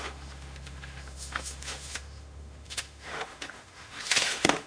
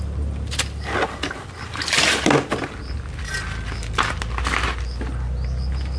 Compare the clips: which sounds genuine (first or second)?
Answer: second